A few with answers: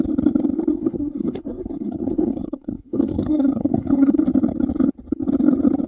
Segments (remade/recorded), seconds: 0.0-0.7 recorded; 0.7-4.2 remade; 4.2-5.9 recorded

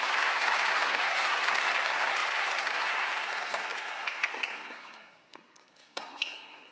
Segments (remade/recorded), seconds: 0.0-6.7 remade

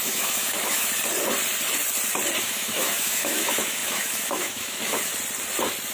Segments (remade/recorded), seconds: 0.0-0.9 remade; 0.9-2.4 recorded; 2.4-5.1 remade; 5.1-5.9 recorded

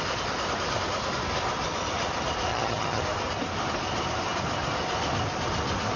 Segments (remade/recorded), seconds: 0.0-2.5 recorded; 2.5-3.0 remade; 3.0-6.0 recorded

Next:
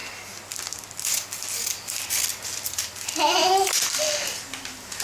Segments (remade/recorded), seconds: 0.0-5.0 recorded

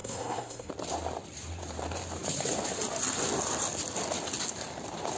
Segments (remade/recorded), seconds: 0.0-0.7 remade; 0.7-5.2 recorded

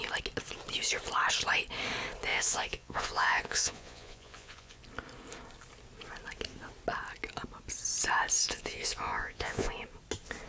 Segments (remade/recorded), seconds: 0.0-2.3 recorded; 2.3-4.8 remade; 4.8-8.4 recorded; 8.4-9.7 remade; 9.7-10.5 recorded

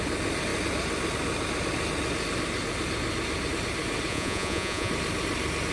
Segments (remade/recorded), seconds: 0.0-4.1 recorded; 4.1-4.9 remade; 4.9-5.7 recorded